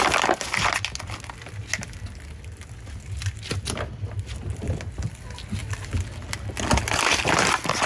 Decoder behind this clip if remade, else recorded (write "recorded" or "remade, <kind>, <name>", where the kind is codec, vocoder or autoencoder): recorded